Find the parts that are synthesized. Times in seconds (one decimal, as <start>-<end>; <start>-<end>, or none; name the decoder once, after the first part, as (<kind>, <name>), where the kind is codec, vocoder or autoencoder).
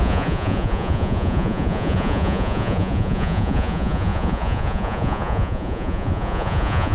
0.0-6.9 (vocoder, Vocos)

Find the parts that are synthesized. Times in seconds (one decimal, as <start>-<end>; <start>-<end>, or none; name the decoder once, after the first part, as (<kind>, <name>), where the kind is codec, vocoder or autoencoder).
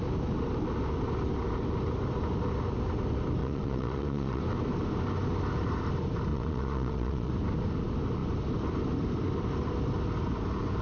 3.4-4.4 (vocoder, Vocos); 6.3-7.3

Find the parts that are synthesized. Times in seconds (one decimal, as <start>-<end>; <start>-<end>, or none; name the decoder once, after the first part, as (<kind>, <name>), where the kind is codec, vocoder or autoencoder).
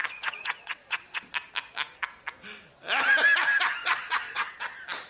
0.0-1.3 (vocoder, Vocos); 3.8-4.5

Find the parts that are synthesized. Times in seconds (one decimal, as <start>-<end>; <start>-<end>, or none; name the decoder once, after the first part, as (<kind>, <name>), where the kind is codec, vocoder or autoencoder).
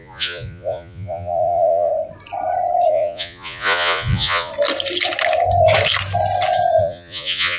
0.0-1.9 (vocoder, Vocos); 2.9-4.5; 6.8-7.6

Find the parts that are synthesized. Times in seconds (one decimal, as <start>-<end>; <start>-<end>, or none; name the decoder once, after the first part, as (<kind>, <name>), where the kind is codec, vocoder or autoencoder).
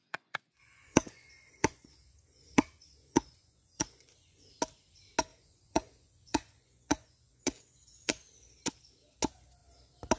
0.0-4.4 (vocoder, Vocos); 5.3-8.2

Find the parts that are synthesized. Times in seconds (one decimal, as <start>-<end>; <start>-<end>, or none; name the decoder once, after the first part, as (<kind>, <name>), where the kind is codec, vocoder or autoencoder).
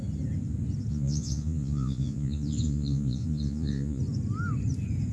0.9-4.0 (vocoder, Vocos)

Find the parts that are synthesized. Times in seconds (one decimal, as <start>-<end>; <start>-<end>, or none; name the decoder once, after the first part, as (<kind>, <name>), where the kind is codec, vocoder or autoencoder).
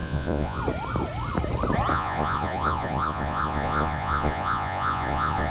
0.0-0.6 (vocoder, Vocos); 1.9-5.5